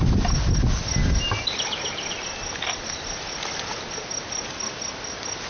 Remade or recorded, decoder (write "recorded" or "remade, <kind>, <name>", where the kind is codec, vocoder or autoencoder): recorded